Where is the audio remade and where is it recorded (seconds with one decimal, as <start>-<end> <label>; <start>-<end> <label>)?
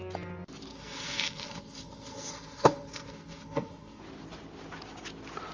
0.0-0.7 recorded; 0.7-4.0 remade; 4.0-5.5 recorded